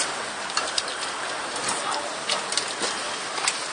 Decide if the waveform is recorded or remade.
recorded